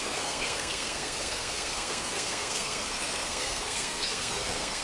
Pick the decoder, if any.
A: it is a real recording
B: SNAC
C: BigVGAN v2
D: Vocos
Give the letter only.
B